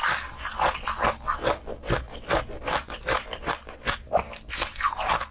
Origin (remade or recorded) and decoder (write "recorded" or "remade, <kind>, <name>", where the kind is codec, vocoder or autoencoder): recorded